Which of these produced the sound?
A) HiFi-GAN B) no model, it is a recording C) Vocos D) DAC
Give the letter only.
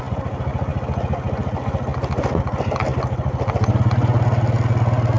B